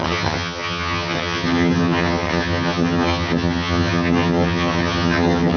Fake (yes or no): yes